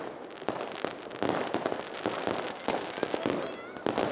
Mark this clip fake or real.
real